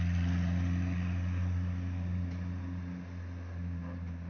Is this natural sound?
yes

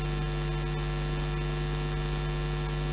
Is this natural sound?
yes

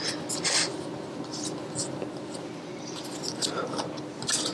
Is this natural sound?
yes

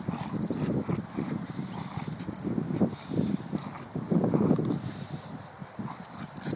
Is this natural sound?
yes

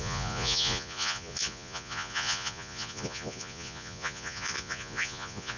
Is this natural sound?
no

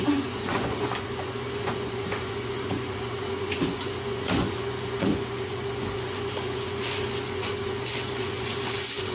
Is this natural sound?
no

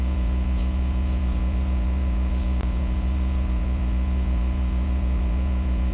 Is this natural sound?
no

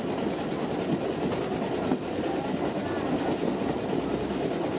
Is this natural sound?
yes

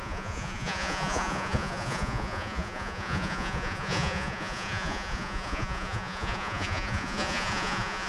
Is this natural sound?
no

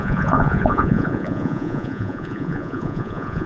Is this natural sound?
no